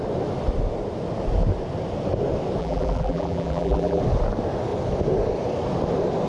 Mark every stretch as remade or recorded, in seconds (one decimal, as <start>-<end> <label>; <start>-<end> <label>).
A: 0.0-2.6 recorded; 2.6-4.0 remade; 4.0-6.3 recorded